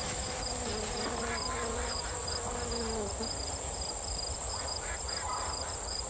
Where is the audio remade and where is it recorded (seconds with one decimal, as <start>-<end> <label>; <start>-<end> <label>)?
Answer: 0.0-0.7 remade; 0.7-4.4 recorded; 4.4-6.1 remade